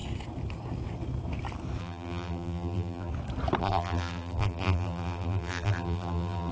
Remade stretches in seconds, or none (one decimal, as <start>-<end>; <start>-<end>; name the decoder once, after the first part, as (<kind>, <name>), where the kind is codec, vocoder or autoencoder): 1.8-3.1 (vocoder, BigVGAN v2); 3.6-6.5